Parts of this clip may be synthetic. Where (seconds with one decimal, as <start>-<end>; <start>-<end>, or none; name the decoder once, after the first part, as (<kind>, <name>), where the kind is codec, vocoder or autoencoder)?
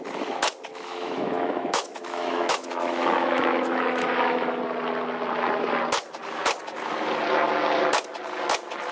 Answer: 0.7-4.6 (autoencoder, DAC-VAE)